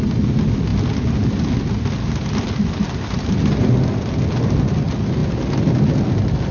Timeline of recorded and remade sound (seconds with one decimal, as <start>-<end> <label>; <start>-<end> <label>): 0.0-6.5 recorded